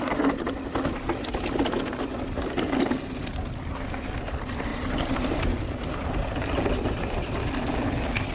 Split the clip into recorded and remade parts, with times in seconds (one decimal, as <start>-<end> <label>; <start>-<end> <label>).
0.0-4.7 recorded; 4.7-6.7 remade; 6.7-8.3 recorded